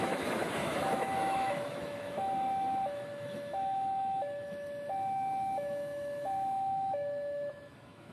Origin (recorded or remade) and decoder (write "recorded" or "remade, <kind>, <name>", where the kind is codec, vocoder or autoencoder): remade, autoencoder, DAC-VAE